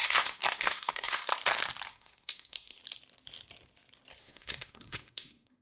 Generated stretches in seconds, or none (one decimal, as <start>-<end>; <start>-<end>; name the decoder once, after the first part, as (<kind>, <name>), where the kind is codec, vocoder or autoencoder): 0.0-1.3 (codec, SNAC); 1.9-2.8; 4.2-5.6